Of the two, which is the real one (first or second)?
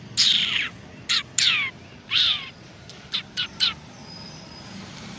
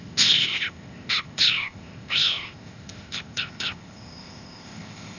first